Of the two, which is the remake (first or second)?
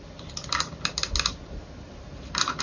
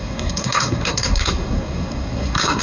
second